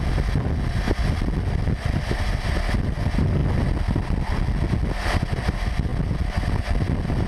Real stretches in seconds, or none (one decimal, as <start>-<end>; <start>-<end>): 0.0-7.3